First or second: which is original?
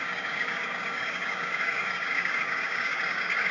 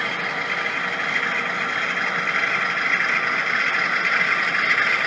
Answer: second